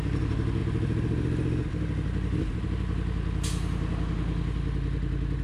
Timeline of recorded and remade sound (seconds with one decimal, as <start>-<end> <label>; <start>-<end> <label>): 0.0-5.4 recorded